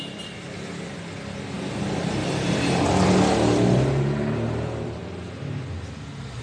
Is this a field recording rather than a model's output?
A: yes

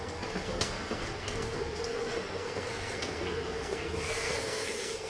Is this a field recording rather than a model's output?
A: no